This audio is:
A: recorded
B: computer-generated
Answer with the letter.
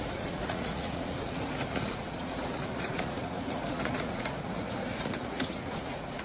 B